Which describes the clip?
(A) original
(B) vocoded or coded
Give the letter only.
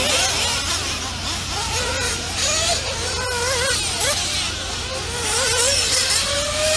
A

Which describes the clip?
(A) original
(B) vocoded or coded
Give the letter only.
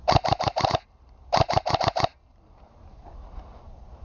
B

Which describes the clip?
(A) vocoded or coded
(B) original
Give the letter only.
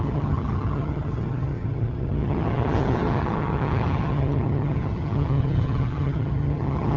A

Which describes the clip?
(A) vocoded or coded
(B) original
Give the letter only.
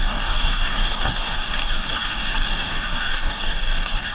A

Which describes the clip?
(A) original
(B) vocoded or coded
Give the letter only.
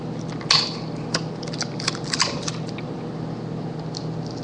A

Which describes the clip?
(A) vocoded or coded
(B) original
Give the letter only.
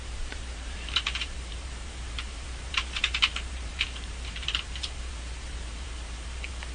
A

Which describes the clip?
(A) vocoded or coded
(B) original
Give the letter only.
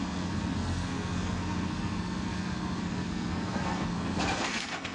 A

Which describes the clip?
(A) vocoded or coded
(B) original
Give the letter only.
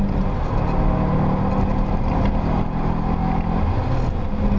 B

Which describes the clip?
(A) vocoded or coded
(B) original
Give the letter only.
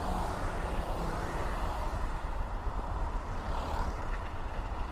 A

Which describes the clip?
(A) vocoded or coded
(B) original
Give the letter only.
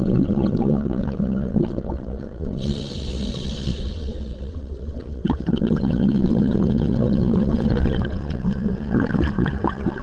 A